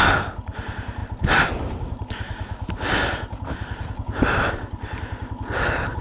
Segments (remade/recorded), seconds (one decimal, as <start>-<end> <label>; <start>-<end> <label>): 0.0-6.0 recorded